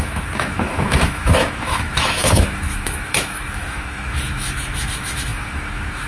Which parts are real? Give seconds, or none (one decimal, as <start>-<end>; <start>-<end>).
none